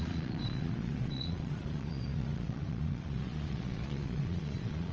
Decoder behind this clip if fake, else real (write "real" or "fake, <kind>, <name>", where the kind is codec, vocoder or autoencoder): fake, vocoder, Vocos